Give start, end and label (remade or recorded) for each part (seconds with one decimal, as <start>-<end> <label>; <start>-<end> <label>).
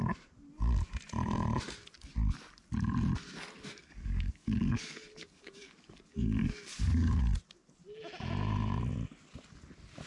0.0-3.8 recorded; 3.8-7.2 remade; 7.2-10.1 recorded